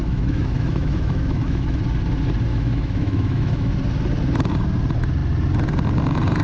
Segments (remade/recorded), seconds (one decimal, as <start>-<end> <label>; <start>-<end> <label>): 0.0-1.8 remade; 1.8-2.5 recorded; 2.5-3.7 remade; 3.7-6.4 recorded